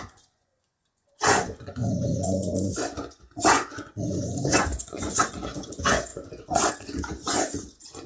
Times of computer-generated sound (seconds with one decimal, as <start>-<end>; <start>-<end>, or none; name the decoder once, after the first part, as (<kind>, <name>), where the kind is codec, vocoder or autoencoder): 0.0-8.1 (vocoder, Vocos)